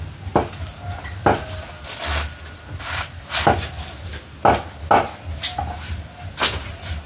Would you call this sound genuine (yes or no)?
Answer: yes